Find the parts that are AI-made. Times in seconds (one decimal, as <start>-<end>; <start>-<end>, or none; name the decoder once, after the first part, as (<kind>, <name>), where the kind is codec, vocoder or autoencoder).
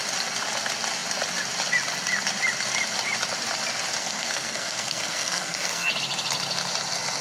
4.0-5.9 (codec, SNAC)